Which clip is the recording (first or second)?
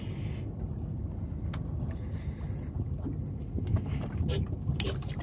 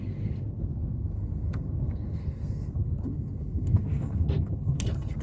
first